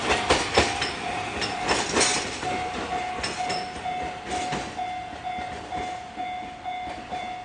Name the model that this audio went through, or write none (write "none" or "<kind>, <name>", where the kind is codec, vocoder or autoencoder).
none